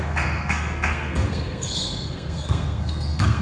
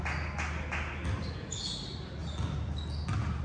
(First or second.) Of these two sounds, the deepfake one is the first